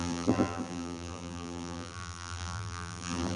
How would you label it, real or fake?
fake